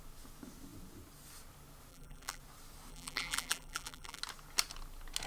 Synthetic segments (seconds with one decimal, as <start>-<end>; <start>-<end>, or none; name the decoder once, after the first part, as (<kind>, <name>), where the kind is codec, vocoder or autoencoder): 1.9-2.4 (vocoder, BigVGAN v2); 2.9-4.2